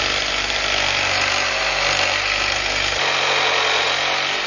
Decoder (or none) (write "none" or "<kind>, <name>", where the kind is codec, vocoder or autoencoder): vocoder, BigVGAN v2